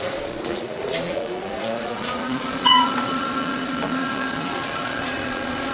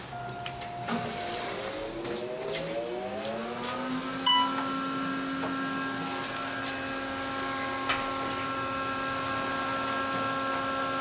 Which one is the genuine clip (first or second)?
second